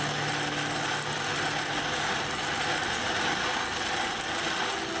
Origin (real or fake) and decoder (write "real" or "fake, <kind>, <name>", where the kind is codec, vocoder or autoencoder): real